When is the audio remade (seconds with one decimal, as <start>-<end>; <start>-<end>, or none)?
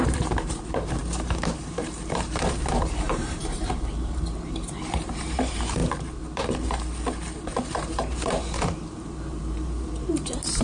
0.0-5.8; 7.7-10.6